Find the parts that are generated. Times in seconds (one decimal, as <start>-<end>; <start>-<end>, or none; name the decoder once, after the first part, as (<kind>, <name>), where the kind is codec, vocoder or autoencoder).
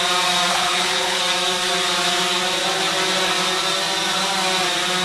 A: 0.5-1.2 (codec, HILCodec)